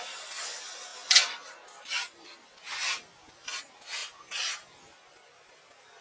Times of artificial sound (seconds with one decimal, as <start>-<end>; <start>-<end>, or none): none